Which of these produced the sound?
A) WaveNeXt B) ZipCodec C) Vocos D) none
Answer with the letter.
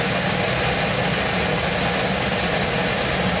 D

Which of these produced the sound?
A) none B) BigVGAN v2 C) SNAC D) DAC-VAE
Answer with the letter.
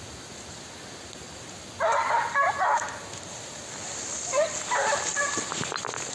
A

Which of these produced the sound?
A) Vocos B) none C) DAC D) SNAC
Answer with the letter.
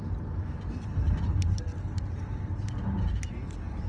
B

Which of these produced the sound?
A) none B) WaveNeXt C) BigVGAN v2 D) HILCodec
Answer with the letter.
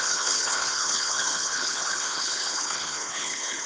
D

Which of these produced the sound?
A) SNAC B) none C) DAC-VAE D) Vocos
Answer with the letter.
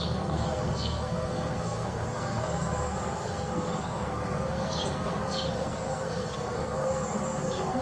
A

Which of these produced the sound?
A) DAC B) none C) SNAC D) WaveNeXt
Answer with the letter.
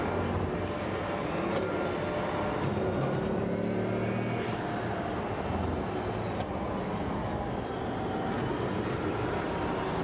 B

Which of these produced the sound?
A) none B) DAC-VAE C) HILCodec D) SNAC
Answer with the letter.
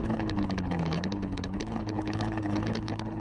C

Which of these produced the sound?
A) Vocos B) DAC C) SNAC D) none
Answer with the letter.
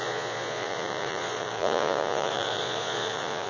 A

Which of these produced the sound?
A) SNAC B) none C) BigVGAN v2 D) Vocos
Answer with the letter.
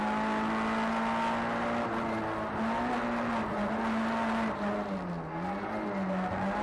B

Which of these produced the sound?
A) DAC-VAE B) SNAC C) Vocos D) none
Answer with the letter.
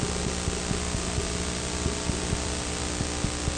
D